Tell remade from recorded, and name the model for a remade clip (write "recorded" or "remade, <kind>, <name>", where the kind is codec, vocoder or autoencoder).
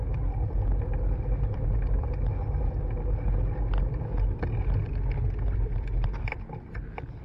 recorded